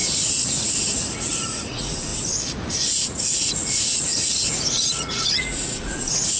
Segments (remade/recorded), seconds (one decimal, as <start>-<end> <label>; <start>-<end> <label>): 0.0-2.1 remade; 2.1-2.7 recorded; 2.7-6.4 remade